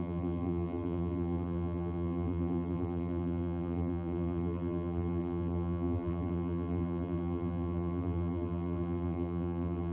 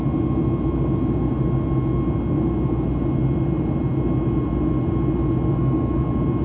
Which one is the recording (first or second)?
second